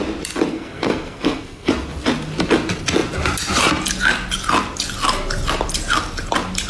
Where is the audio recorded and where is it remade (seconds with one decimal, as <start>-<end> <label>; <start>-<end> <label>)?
0.0-0.5 recorded; 0.5-1.7 remade; 1.7-6.7 recorded